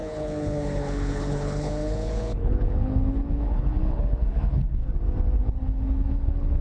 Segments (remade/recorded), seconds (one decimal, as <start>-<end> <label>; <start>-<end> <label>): 0.0-4.8 remade; 4.8-5.4 recorded; 5.4-6.6 remade